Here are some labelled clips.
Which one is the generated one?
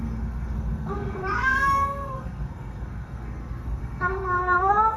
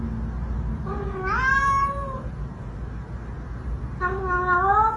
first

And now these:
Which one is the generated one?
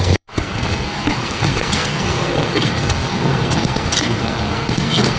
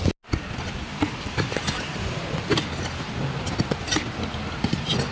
first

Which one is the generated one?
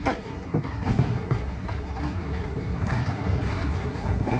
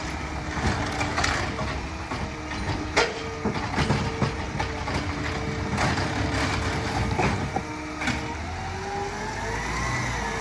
first